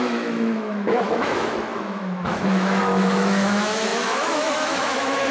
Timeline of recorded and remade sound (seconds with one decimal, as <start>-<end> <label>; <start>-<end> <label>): 0.0-5.3 remade